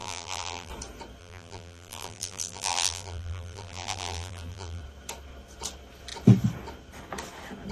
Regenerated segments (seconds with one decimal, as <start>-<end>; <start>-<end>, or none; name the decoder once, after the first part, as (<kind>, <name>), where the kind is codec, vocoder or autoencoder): 0.0-0.7 (vocoder, BigVGAN v2); 1.2-4.8